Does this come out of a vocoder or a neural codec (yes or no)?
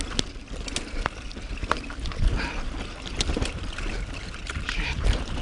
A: no